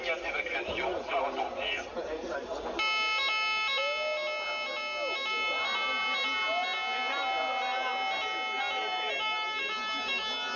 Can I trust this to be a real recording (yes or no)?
yes